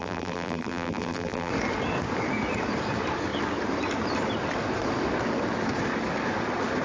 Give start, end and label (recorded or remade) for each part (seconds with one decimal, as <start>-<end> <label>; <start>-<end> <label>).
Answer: 0.0-1.5 remade; 1.5-6.8 recorded